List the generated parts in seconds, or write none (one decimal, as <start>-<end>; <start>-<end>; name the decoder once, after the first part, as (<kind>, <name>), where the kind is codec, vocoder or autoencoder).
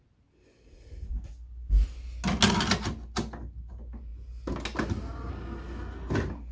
none